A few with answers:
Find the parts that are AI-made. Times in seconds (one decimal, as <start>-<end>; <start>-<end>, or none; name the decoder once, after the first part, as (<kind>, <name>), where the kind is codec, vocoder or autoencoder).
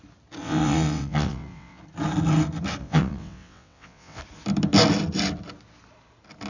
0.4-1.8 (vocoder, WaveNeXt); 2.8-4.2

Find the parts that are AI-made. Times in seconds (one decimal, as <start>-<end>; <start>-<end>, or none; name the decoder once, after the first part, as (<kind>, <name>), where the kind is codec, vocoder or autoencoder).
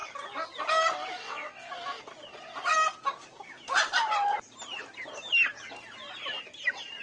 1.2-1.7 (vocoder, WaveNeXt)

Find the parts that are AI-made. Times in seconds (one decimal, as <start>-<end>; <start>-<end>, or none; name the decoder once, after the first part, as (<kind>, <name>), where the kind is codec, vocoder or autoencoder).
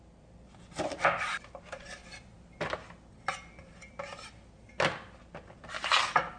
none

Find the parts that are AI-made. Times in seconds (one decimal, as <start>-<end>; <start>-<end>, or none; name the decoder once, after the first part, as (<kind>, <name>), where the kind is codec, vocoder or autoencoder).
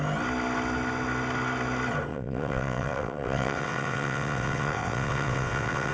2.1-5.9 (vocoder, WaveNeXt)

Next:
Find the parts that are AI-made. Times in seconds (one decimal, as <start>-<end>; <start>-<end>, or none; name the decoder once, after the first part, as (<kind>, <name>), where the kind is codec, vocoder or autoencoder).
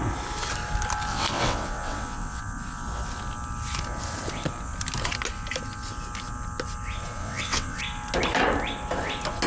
1.1-2.4 (vocoder, WaveNeXt); 7.2-7.8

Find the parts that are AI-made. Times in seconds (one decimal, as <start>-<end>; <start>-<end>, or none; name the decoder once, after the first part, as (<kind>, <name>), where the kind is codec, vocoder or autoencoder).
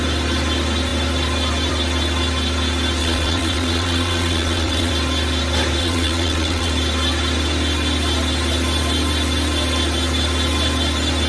3.0-4.9 (vocoder, WaveNeXt); 5.8-6.7